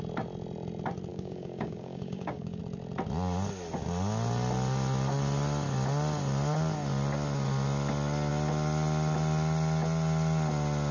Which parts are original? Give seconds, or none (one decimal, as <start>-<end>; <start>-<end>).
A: 0.0-1.1; 2.6-10.9